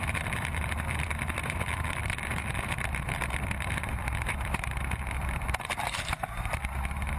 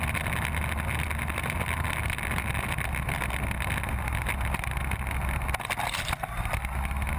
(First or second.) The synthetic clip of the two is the first